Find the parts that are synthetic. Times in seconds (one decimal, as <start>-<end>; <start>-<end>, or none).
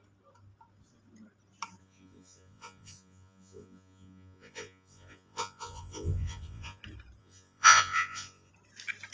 1.8-6.8; 7.2-8.5